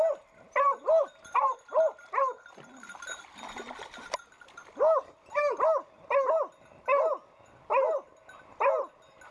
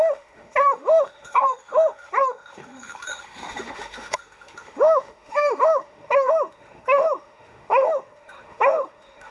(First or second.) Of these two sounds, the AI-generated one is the second